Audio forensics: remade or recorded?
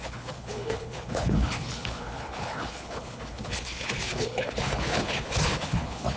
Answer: remade